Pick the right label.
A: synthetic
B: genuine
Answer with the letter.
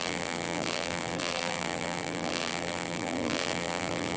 A